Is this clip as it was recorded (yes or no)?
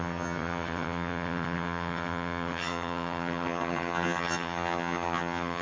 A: no